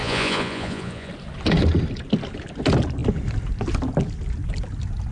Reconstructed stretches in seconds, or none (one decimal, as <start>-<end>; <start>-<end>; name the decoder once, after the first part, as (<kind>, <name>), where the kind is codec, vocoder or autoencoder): 0.0-1.1 (vocoder, Vocos)

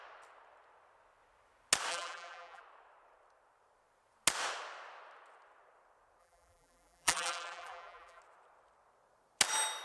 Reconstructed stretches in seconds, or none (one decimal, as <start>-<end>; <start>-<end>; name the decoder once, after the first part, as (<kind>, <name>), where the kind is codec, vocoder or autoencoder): 1.9-2.6 (vocoder, BigVGAN v2); 6.2-8.2

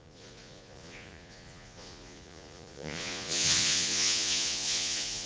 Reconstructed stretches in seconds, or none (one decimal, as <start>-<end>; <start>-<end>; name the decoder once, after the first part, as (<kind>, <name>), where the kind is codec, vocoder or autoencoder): 0.0-5.3 (vocoder, Vocos)

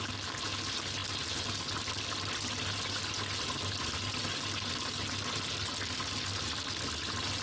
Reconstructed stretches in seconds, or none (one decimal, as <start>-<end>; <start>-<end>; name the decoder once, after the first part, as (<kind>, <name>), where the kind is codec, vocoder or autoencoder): none

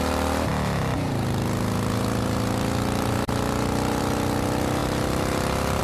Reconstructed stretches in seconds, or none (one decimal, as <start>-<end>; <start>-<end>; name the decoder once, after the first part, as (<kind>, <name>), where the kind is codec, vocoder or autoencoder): none

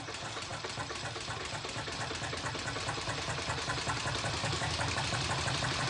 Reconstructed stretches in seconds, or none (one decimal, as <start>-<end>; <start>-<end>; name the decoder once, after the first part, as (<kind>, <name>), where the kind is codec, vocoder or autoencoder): 4.4-5.0 (codec, DAC)